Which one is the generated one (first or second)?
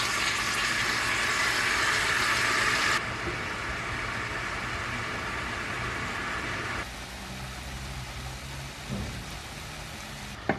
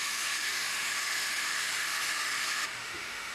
second